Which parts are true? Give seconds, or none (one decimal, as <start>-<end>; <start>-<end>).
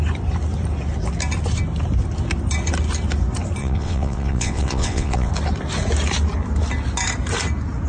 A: 0.0-3.6; 5.3-7.9